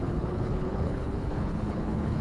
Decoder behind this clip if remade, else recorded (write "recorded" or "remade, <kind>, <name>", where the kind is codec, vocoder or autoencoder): remade, codec, HILCodec